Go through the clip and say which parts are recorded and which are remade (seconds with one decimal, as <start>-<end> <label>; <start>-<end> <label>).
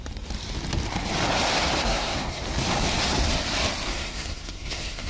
0.0-1.8 recorded; 1.8-2.4 remade; 2.4-3.9 recorded; 3.9-5.1 remade